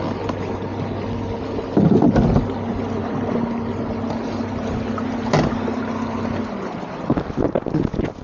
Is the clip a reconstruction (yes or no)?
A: no